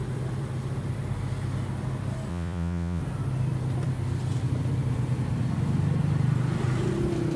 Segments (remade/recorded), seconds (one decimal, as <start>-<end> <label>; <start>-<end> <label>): 0.0-2.3 recorded; 2.3-3.0 remade; 3.0-7.4 recorded